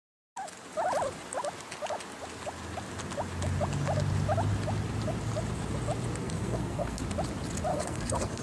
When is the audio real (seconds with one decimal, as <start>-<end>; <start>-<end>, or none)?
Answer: 0.0-6.2; 7.0-7.7